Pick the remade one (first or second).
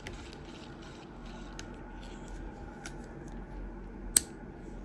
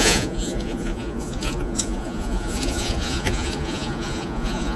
second